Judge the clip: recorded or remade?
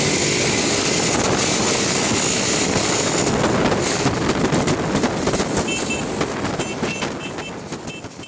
recorded